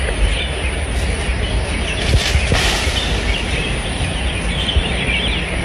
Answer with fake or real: real